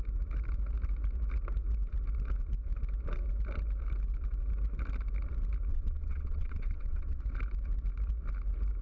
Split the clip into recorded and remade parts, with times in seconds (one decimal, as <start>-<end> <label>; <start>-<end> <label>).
0.0-5.7 recorded; 5.7-7.2 remade; 7.2-8.8 recorded